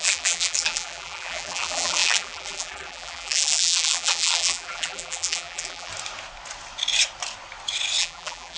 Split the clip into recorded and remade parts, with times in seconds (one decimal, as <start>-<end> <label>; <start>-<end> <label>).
0.0-5.9 remade; 5.9-8.0 recorded; 8.0-8.6 remade